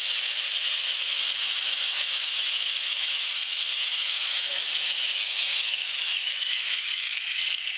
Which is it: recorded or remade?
remade